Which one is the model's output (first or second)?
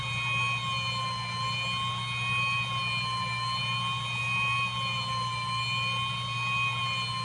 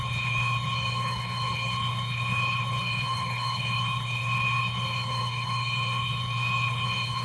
second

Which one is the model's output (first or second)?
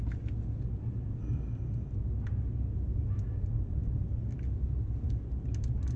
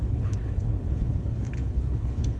second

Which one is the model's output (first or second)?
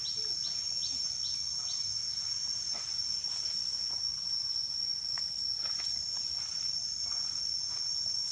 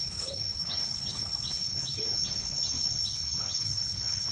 second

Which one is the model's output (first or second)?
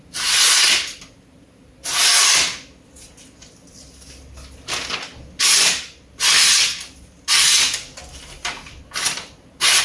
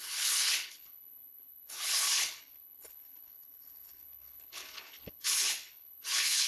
second